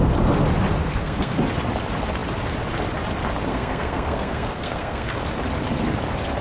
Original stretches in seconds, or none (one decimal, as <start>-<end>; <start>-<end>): 0.0-0.8; 1.4-3.5; 5.2-6.4